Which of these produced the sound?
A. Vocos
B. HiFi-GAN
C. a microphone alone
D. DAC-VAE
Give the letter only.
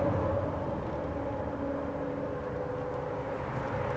C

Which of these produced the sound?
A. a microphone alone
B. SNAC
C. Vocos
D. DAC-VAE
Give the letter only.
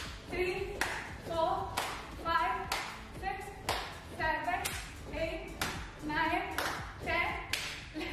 A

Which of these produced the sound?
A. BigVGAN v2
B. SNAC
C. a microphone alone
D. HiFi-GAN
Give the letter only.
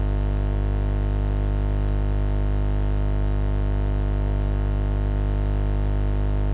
C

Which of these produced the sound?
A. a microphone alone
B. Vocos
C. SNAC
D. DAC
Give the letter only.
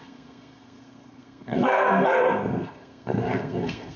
C